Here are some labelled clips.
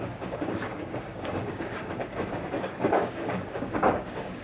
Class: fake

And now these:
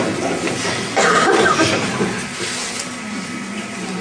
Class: real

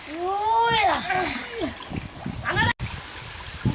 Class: real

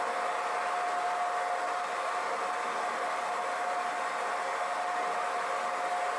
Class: real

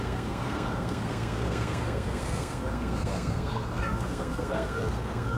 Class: fake